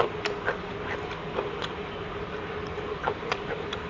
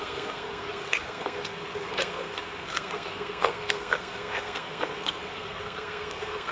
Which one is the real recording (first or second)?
first